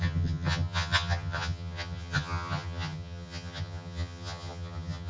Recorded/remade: remade